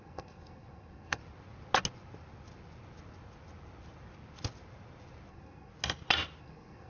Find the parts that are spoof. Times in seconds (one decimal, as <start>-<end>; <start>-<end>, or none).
0.0-1.2; 5.3-5.7; 6.4-6.9

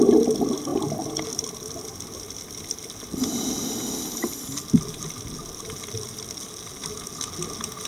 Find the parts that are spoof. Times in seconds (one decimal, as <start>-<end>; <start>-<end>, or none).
0.7-2.8

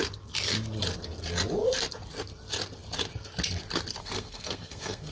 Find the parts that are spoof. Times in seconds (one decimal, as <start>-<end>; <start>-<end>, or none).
4.0-5.1

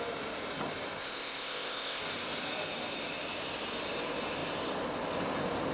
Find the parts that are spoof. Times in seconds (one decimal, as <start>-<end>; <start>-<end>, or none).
1.0-2.0

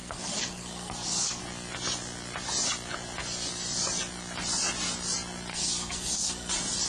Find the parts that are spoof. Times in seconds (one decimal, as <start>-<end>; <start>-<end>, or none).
0.0-1.4; 5.5-6.5

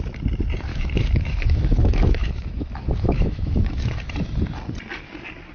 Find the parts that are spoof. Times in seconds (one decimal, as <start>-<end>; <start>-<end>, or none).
0.7-4.0